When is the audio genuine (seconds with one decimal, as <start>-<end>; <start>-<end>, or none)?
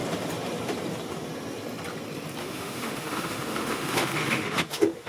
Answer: 0.0-2.4